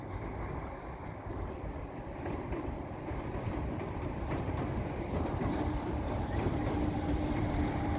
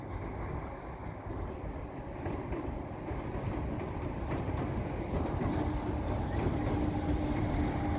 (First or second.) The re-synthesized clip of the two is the first